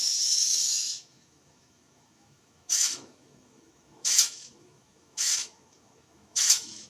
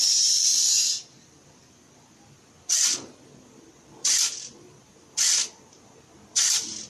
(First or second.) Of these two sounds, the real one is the second